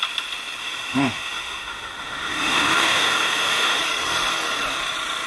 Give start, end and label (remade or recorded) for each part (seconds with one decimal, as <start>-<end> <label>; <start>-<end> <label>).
0.0-0.6 recorded; 0.6-3.8 remade; 3.8-5.3 recorded